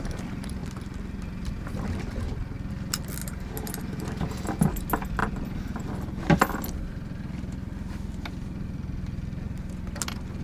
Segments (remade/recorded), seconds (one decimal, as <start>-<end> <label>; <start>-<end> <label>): 0.0-10.4 recorded